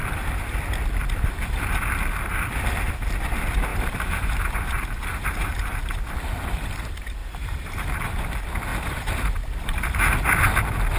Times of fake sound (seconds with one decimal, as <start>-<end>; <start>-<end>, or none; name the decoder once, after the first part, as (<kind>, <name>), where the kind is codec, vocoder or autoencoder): 3.7-5.6 (vocoder, BigVGAN v2); 7.2-8.0